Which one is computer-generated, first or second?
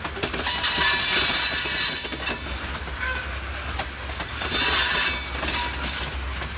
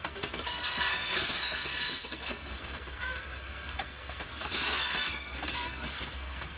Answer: second